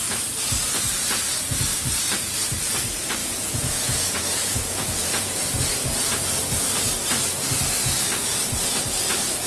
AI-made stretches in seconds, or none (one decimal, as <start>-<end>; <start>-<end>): 3.2-5.6